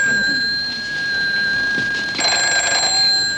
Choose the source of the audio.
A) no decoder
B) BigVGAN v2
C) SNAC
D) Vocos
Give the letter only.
A